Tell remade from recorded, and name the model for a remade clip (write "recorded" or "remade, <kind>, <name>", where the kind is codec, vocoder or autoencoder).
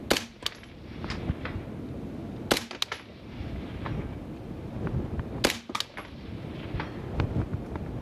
recorded